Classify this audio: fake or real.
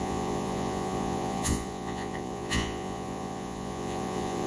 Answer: fake